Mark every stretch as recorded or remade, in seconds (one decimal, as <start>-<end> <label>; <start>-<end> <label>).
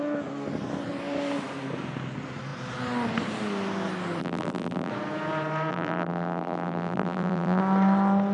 0.0-4.2 recorded; 4.2-4.9 remade; 4.9-5.7 recorded; 5.7-7.6 remade; 7.6-8.3 recorded